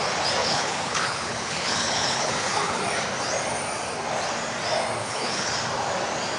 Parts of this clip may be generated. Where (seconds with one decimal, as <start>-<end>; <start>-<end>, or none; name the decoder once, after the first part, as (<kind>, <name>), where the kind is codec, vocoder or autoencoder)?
0.4-2.8 (codec, HILCodec); 5.0-5.5